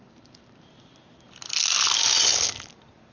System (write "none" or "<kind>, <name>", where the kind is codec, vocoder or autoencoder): none